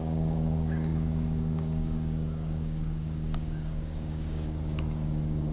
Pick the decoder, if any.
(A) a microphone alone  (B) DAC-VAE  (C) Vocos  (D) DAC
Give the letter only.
D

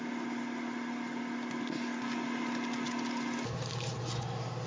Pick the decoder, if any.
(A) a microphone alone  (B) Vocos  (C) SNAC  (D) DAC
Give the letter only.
A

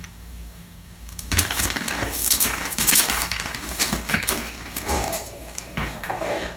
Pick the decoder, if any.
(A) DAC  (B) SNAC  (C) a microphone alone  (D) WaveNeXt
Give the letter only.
A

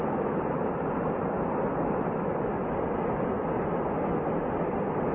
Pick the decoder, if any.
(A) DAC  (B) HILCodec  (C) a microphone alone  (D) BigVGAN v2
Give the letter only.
C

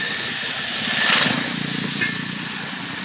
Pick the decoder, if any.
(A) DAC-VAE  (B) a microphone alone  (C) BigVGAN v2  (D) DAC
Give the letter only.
B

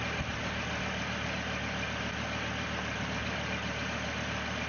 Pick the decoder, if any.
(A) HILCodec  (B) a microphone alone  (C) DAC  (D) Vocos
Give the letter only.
B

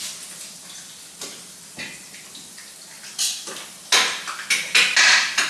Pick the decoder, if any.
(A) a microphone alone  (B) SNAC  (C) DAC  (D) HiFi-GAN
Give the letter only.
A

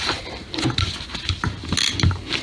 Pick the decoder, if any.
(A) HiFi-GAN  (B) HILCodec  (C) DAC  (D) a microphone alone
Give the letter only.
D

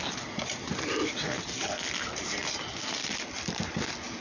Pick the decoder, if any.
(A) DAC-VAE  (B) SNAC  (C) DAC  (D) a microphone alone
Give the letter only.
D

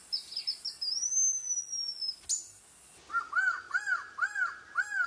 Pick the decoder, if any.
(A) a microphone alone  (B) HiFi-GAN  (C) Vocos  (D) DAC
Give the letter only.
A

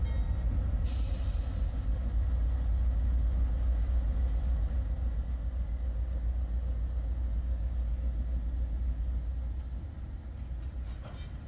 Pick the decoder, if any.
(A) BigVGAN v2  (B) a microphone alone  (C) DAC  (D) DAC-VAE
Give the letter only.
B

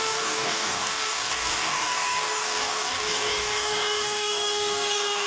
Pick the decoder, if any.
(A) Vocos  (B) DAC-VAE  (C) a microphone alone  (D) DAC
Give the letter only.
D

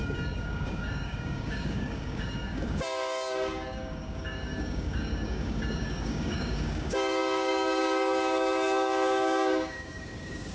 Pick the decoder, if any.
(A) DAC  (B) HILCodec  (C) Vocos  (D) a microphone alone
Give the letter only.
A